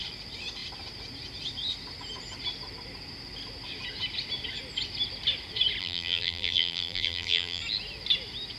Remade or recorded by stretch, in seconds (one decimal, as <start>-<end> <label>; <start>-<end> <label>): 0.0-5.8 recorded; 5.8-7.6 remade; 7.6-8.6 recorded